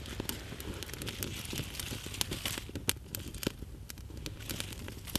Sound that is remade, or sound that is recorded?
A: recorded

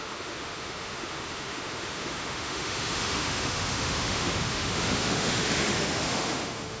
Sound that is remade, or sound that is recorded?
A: remade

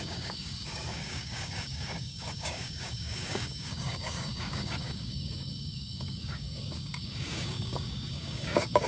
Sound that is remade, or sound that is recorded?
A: remade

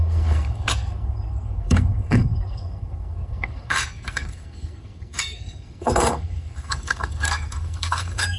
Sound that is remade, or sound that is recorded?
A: remade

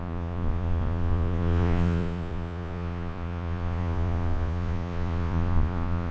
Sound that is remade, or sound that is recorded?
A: remade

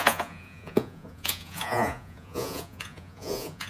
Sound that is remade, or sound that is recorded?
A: remade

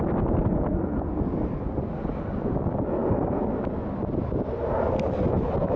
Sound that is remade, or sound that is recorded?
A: recorded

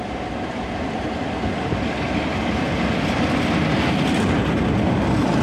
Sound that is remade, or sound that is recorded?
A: recorded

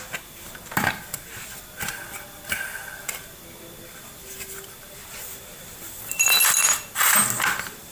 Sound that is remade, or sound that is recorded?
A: recorded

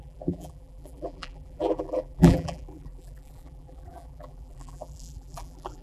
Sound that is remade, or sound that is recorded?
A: remade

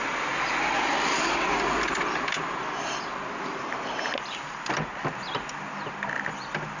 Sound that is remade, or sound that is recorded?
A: recorded